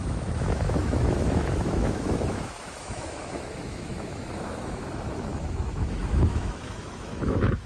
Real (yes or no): no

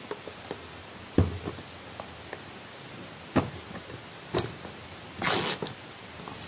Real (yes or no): yes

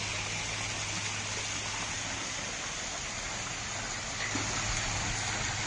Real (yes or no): yes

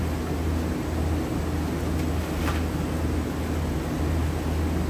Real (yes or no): yes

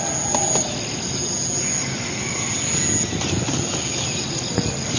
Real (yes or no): yes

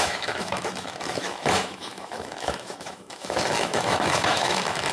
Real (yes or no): no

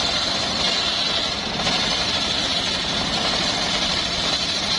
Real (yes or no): yes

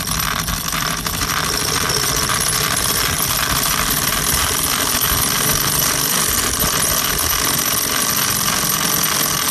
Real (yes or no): yes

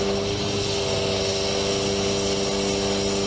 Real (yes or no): yes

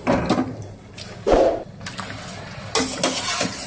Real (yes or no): yes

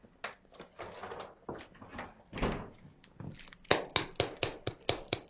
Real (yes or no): yes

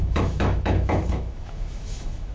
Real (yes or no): no